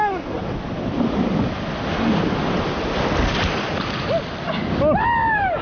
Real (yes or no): yes